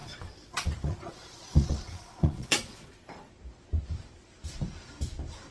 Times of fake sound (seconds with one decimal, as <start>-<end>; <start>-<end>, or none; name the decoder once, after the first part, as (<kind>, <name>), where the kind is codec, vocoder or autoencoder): 0.0-3.3 (vocoder, Vocos)